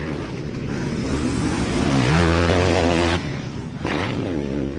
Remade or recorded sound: remade